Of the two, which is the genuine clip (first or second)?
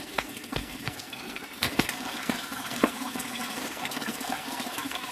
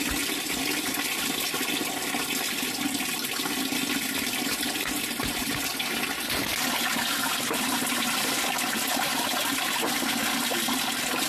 second